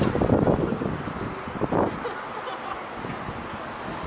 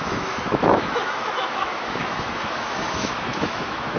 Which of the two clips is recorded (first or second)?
first